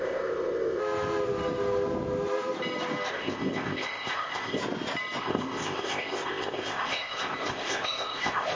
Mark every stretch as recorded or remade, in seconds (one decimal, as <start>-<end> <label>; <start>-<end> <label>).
0.0-0.8 remade; 0.8-3.1 recorded; 3.1-4.6 remade; 4.6-5.2 recorded; 5.2-8.5 remade

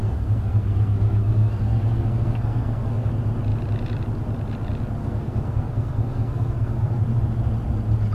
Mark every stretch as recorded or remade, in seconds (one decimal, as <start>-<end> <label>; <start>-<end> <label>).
0.0-3.1 remade; 3.1-5.0 recorded; 5.0-7.0 remade; 7.0-8.1 recorded

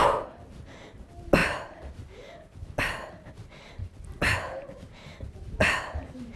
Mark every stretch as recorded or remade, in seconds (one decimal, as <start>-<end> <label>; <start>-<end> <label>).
0.0-6.4 recorded

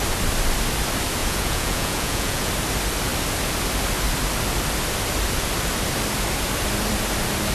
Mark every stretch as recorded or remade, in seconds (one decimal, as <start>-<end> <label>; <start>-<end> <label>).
0.0-1.2 recorded; 1.2-2.5 remade; 2.5-7.5 recorded

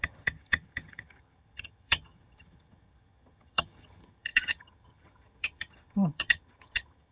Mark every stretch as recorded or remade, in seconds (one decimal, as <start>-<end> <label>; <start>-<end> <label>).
0.0-7.1 remade

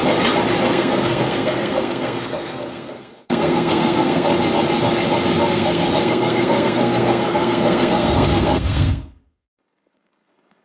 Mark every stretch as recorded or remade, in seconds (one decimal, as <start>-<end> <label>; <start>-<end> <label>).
0.0-0.7 recorded; 0.7-4.3 remade; 4.3-5.5 recorded; 5.5-10.6 remade

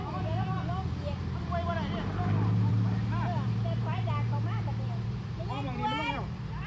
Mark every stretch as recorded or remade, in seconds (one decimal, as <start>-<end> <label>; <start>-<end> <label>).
0.0-2.7 recorded; 2.7-6.7 remade